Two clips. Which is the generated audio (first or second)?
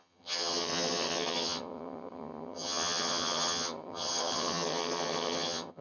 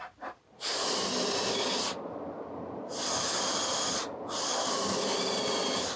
first